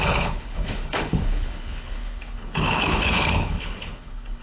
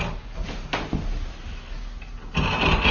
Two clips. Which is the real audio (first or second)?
second